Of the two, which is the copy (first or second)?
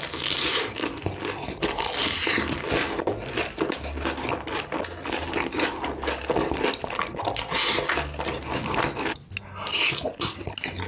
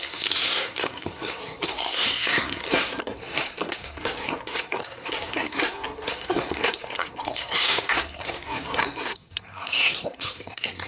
second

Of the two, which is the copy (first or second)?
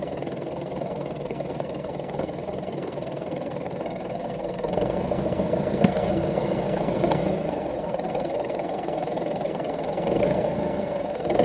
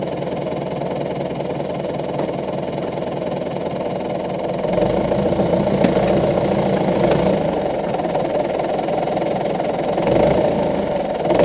first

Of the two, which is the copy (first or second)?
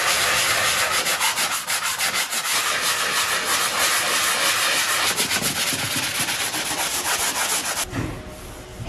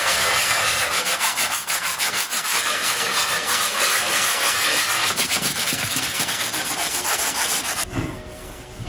second